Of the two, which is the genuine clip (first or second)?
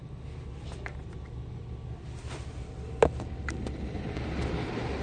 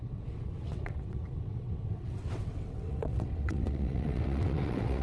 first